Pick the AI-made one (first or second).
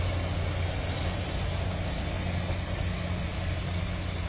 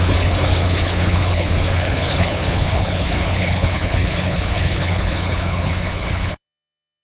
second